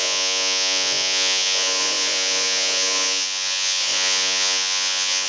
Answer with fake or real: fake